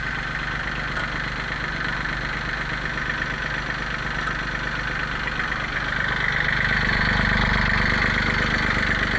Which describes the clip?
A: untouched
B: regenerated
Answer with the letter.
A